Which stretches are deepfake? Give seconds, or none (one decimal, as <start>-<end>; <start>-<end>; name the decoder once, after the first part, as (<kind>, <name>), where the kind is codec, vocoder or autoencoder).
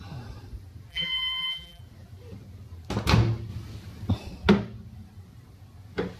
0.9-1.8 (vocoder, BigVGAN v2)